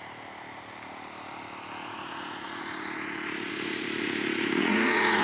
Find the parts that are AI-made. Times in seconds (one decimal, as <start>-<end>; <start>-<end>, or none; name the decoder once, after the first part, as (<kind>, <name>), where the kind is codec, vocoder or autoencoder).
1.8-5.2 (vocoder, Vocos)